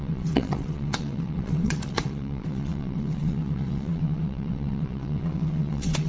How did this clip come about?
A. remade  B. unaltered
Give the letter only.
A